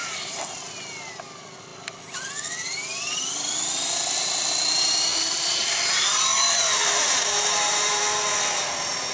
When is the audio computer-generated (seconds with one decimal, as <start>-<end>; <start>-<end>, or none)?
0.0-0.7; 2.9-3.5; 5.1-8.0